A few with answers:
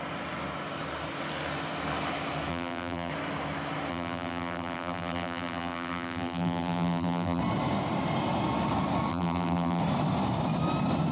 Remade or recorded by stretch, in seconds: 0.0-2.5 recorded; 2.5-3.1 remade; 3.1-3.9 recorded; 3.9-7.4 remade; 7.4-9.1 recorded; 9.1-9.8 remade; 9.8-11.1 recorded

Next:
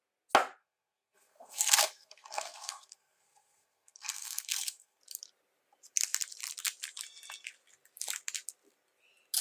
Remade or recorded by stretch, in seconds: 0.0-0.6 recorded; 0.6-5.0 remade; 5.0-9.4 recorded

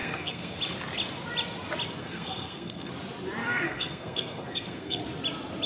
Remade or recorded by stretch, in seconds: 0.0-0.6 remade; 0.6-2.0 recorded; 2.0-2.9 remade; 2.9-3.4 recorded; 3.4-5.0 remade; 5.0-5.7 recorded